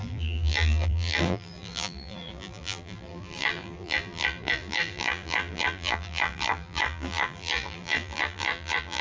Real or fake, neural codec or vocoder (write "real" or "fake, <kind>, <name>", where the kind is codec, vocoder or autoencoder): fake, vocoder, BigVGAN v2